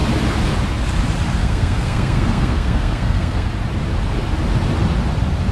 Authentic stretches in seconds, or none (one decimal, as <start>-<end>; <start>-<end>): 0.0-1.4; 3.5-5.5